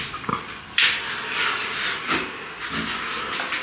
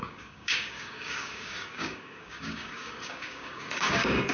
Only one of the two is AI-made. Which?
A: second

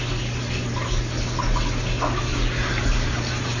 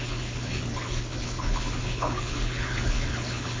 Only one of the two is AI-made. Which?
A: second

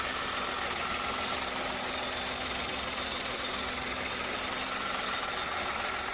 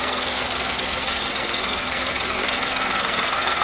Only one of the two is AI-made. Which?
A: second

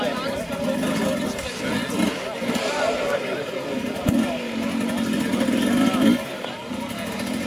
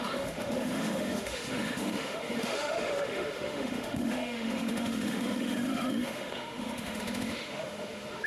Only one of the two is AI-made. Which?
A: second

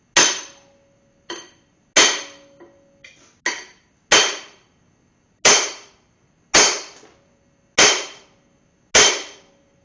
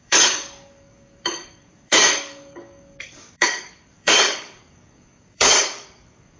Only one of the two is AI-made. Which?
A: second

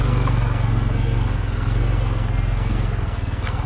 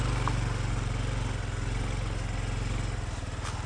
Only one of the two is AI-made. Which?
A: first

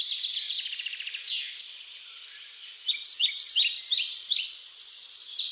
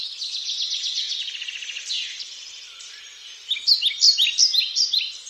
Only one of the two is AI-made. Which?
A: first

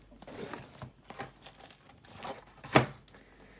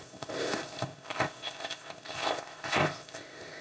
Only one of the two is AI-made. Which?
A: second